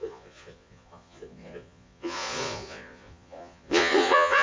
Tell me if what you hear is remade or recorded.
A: remade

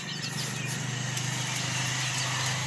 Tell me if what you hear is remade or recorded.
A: recorded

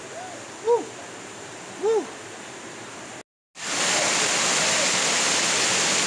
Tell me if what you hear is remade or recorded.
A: recorded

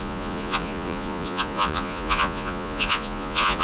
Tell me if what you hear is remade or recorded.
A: remade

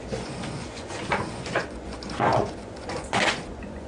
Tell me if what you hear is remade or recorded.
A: remade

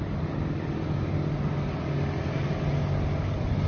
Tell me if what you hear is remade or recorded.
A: recorded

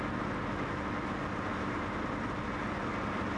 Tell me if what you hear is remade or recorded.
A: recorded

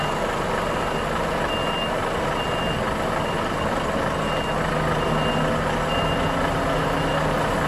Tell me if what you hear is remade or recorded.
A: recorded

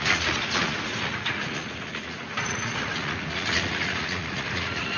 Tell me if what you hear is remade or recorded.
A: remade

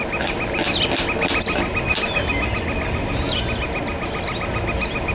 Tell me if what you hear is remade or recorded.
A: recorded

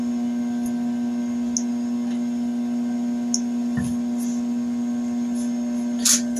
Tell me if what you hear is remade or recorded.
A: recorded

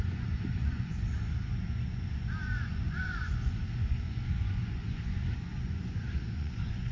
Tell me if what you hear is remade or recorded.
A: remade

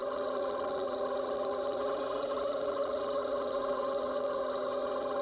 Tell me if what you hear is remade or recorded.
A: remade